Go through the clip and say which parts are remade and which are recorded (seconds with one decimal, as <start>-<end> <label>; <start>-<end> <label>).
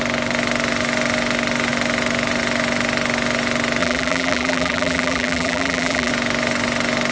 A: 0.0-3.8 recorded; 3.8-6.1 remade; 6.1-7.1 recorded